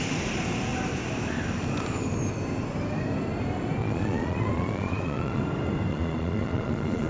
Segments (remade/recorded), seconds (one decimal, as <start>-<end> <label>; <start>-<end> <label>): 0.0-3.8 recorded; 3.8-5.4 remade; 5.4-5.9 recorded; 5.9-7.1 remade